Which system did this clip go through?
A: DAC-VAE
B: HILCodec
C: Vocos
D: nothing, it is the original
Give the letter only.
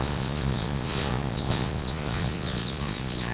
C